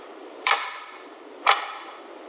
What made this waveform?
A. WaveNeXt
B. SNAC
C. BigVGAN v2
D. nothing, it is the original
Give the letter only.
C